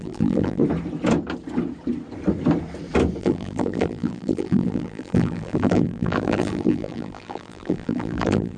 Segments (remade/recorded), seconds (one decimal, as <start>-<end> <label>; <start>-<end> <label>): 0.0-0.6 remade; 0.6-3.2 recorded; 3.2-8.6 remade